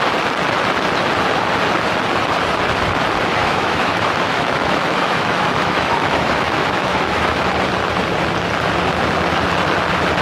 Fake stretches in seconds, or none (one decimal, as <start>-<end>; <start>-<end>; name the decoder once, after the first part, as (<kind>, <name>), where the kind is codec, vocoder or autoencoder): 3.4-7.3 (autoencoder, DAC-VAE)